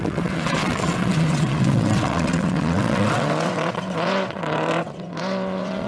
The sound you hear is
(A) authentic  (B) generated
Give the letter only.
B